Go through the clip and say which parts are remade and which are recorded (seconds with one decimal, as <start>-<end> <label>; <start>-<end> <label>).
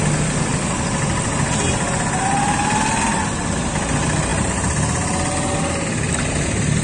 0.0-6.8 recorded